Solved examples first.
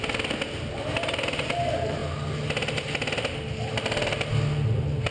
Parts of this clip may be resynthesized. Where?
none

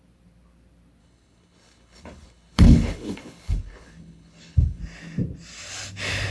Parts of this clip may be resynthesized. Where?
1.0-4.8 (codec, HILCodec)